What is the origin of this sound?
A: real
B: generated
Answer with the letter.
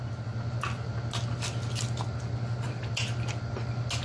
A